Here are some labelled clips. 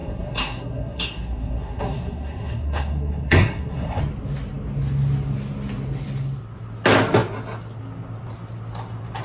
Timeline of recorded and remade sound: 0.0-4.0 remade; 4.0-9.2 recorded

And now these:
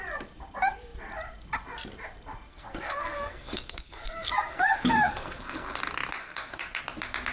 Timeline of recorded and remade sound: 0.0-2.5 recorded; 2.5-5.8 remade; 5.8-6.2 recorded; 6.2-6.8 remade; 6.8-7.3 recorded

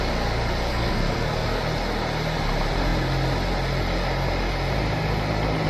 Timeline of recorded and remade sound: 0.0-0.7 recorded; 0.7-1.6 remade; 1.6-5.7 recorded

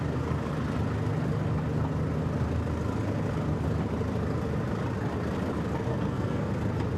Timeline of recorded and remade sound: 0.0-5.9 recorded; 5.9-6.5 remade; 6.5-7.0 recorded

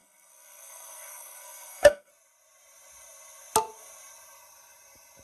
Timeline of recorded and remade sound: 0.0-2.1 remade; 2.1-5.2 recorded

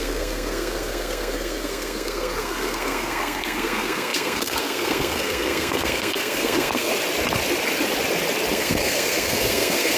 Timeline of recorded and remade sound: 0.0-6.9 remade; 6.9-8.5 recorded; 8.5-10.0 remade